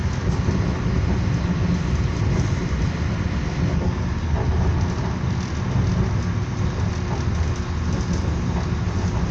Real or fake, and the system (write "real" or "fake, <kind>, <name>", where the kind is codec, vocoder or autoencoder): real